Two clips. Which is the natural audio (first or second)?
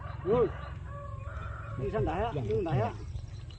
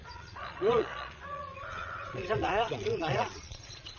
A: first